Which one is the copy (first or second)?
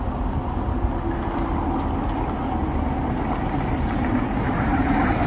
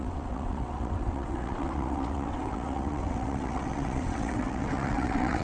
second